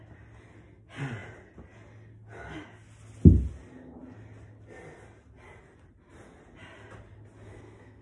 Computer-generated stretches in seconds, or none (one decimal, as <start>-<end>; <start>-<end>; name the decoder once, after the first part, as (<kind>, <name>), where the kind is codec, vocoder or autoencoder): 7.5-8.0 (codec, SNAC)